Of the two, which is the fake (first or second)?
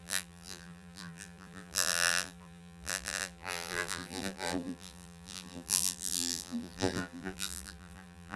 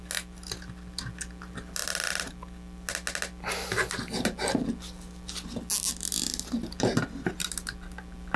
first